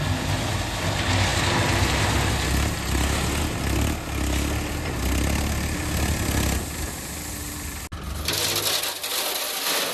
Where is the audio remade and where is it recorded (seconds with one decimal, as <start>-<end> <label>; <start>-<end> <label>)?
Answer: 0.0-9.9 recorded